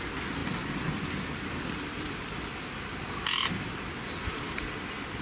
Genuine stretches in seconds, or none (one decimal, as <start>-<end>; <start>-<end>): 0.0-5.2